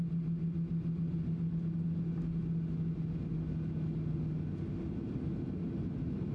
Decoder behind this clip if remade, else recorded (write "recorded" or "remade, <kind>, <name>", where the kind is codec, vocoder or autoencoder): recorded